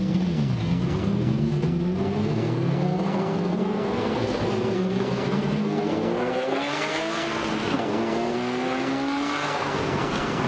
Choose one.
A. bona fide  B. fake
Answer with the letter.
B